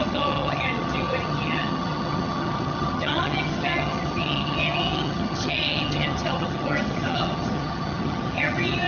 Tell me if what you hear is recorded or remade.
remade